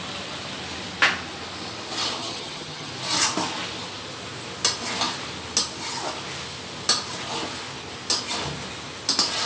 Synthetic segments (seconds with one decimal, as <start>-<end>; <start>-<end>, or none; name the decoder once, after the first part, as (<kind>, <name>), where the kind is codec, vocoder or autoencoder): 2.2-2.9 (vocoder, HiFi-GAN)